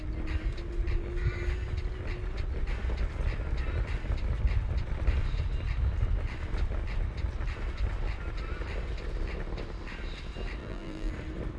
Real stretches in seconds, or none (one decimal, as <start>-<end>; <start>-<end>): 0.0-10.6; 11.1-11.6

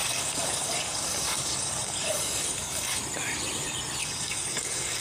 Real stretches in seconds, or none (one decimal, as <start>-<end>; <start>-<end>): 3.0-4.0